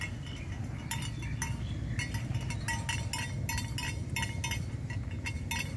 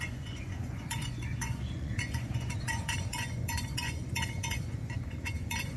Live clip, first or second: first